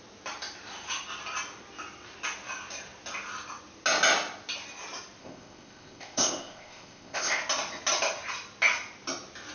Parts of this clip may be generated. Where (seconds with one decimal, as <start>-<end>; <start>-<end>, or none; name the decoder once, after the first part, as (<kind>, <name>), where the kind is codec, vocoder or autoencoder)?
5.2-7.4 (codec, ZipCodec)